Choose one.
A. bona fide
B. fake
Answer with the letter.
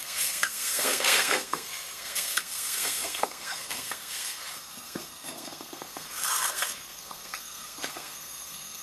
B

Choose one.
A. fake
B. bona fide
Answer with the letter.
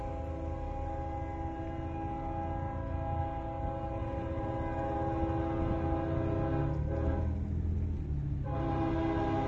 B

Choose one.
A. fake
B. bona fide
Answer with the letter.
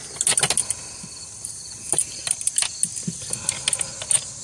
B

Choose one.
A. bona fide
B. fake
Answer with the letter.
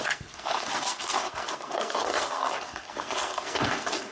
B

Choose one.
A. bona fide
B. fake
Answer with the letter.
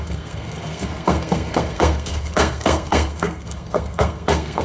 B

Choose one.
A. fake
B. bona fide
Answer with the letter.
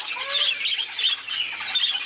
B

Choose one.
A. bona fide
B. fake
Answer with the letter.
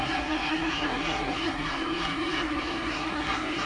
B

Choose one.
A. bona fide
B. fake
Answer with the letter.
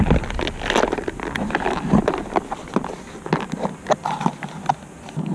A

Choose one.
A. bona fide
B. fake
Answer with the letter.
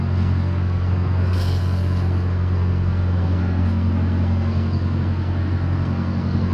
B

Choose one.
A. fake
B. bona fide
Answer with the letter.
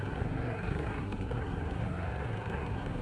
A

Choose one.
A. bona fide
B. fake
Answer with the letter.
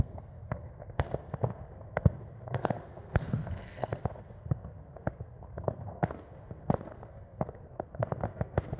B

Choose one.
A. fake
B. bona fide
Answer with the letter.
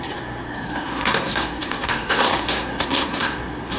A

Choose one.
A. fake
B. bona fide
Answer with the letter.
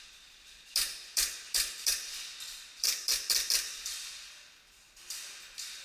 B